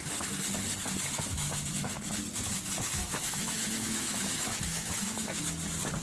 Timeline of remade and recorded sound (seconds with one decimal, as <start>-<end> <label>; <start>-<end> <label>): 0.0-1.3 recorded; 1.3-2.0 remade; 2.0-3.0 recorded; 3.0-5.4 remade; 5.4-6.0 recorded